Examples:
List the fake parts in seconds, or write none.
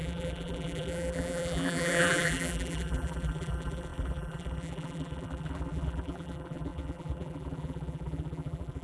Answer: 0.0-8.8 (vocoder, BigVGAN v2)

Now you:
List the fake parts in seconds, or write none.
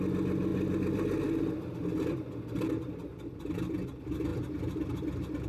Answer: 0.5-3.4 (vocoder, BigVGAN v2)